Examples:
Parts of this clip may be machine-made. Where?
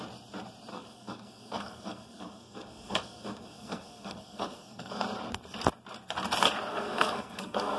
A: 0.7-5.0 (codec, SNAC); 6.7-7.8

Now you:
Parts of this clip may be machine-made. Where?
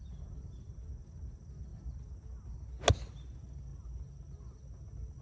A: none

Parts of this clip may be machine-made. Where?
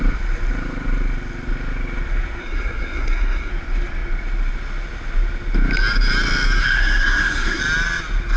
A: 2.4-3.5 (codec, SNAC); 6.6-7.6